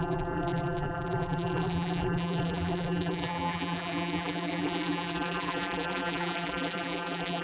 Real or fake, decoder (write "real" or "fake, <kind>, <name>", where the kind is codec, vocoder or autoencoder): fake, vocoder, BigVGAN v2